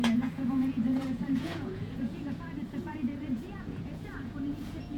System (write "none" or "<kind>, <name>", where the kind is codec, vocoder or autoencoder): vocoder, Vocos